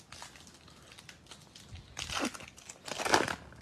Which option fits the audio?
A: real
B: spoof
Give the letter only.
A